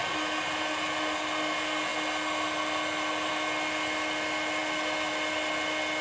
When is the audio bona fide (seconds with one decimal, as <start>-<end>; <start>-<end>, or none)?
0.0-6.0